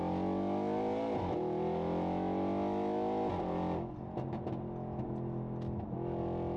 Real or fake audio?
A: real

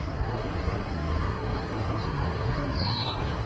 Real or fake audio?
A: fake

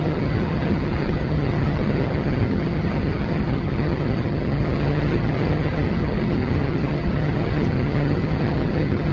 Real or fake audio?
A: fake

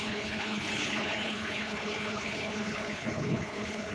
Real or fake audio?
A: fake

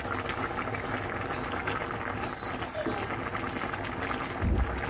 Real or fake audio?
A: real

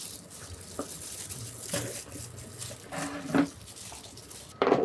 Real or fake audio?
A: real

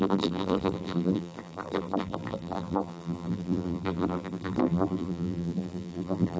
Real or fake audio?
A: fake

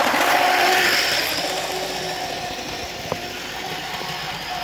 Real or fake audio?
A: real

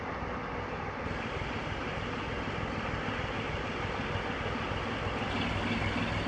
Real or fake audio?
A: real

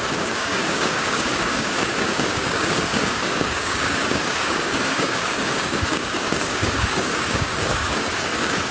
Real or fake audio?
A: fake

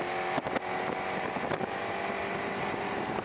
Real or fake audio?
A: real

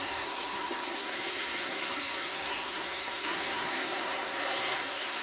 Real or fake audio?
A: fake